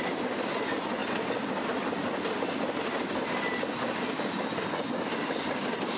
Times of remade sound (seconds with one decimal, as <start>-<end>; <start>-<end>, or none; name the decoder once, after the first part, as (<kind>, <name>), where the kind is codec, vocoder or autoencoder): none